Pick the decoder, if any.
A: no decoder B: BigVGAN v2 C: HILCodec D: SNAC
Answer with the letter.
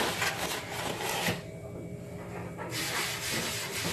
A